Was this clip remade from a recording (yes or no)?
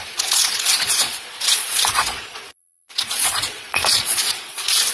yes